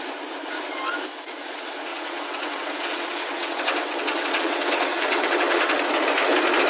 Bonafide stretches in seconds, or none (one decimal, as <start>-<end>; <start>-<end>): 0.0-1.9; 5.9-6.7